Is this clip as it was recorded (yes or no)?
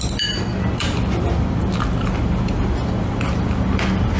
yes